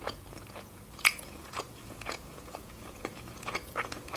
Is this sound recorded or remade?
remade